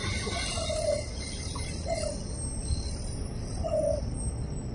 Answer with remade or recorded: recorded